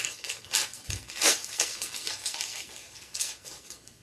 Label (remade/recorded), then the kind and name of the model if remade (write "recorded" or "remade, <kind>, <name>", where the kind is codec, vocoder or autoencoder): remade, codec, SNAC